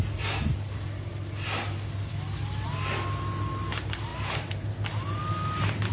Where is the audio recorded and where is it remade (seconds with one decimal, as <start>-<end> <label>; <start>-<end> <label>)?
0.0-5.9 recorded

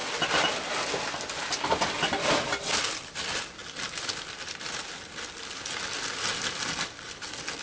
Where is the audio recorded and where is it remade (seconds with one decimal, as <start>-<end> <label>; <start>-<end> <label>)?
0.0-7.6 recorded

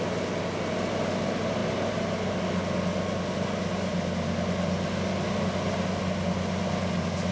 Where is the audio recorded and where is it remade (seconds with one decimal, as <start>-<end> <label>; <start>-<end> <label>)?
0.0-7.3 recorded

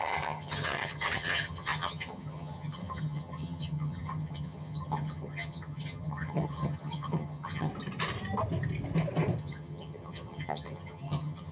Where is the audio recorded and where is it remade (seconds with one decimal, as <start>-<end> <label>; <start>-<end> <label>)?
0.0-7.7 remade; 7.7-9.4 recorded; 9.4-11.5 remade

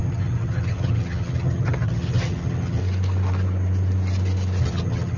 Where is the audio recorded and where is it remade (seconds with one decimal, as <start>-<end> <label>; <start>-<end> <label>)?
0.0-2.8 remade; 2.8-4.6 recorded; 4.6-5.2 remade

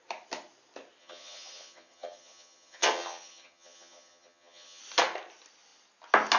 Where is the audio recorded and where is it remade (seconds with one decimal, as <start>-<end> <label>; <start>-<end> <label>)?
0.0-1.0 recorded; 1.0-4.8 remade; 4.8-6.4 recorded